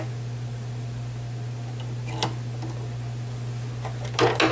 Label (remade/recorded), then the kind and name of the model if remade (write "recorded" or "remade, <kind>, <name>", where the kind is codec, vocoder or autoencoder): recorded